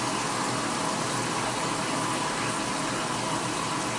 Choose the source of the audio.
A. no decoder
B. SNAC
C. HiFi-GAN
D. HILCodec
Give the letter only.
A